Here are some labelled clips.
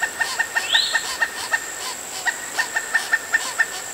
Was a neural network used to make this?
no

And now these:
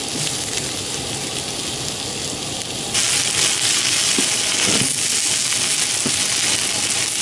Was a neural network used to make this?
no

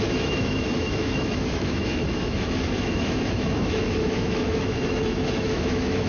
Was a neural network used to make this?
yes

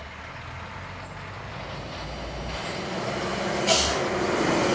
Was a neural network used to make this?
no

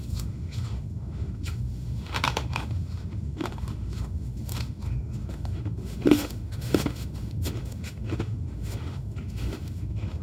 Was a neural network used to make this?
yes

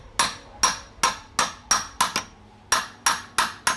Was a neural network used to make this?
no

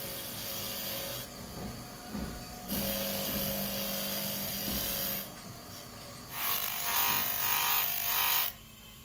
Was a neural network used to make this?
no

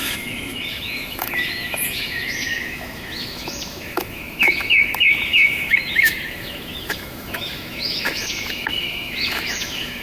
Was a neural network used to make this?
yes